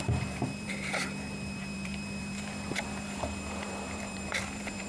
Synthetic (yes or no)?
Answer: yes